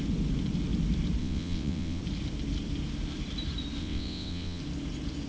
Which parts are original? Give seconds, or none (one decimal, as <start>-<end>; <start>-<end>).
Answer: 0.0-1.2; 2.0-3.8; 4.6-5.3